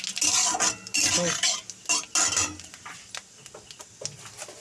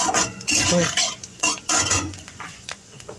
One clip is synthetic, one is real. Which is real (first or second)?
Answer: first